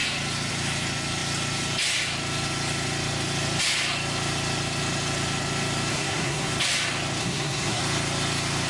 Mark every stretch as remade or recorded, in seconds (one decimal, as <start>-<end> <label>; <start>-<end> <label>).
0.0-5.9 recorded; 5.9-6.5 remade; 6.5-7.2 recorded; 7.2-7.8 remade; 7.8-8.7 recorded

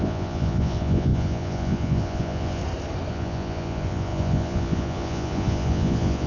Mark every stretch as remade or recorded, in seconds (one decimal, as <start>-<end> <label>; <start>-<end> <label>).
0.0-2.6 remade; 2.6-3.1 recorded; 3.1-6.3 remade

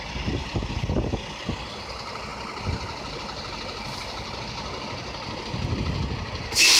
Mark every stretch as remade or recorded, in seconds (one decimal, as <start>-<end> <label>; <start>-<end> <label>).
0.0-6.8 recorded

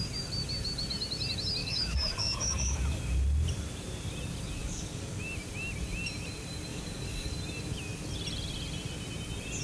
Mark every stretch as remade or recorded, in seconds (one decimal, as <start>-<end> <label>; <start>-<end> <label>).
0.0-1.6 recorded; 1.6-3.0 remade; 3.0-4.6 recorded; 4.6-5.2 remade; 5.2-6.7 recorded; 6.7-7.3 remade; 7.3-9.6 recorded

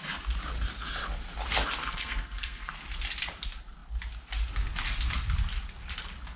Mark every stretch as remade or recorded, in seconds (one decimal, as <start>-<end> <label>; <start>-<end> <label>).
0.0-1.8 recorded; 1.8-2.7 remade; 2.7-6.4 recorded

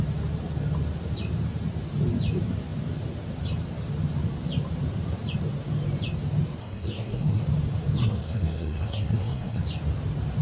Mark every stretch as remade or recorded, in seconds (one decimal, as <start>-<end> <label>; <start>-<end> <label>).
0.0-6.6 recorded; 6.6-7.4 remade; 7.4-8.0 recorded; 8.0-9.6 remade; 9.6-10.4 recorded

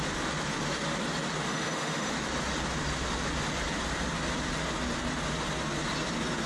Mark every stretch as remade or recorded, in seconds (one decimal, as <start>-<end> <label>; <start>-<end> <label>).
0.0-1.5 recorded; 1.5-2.1 remade; 2.1-6.5 recorded